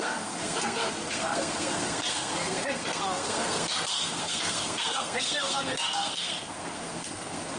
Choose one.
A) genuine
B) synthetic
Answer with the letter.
B